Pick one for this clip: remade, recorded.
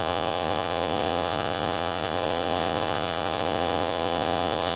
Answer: remade